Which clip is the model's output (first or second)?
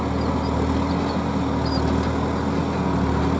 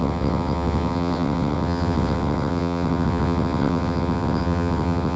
second